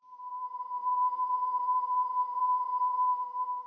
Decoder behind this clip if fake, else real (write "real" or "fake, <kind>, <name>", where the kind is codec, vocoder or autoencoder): fake, vocoder, Vocos